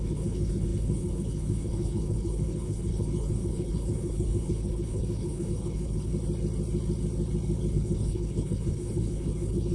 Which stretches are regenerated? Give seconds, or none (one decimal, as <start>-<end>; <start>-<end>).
0.0-6.1; 7.7-9.7